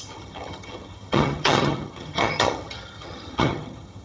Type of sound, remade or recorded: remade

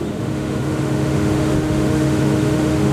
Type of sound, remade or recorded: remade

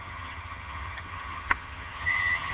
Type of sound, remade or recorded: remade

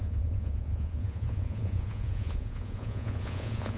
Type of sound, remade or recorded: remade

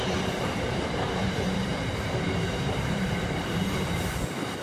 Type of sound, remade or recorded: remade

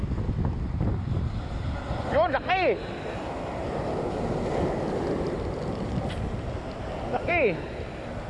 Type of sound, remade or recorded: recorded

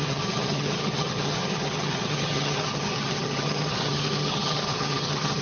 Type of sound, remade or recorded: remade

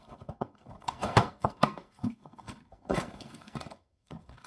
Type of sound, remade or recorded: remade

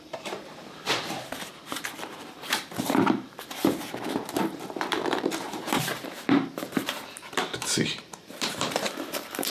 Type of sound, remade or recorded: remade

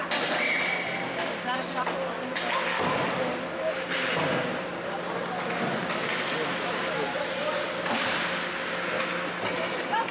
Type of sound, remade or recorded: recorded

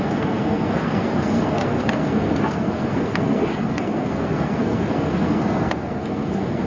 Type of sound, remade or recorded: remade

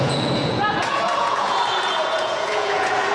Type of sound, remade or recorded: remade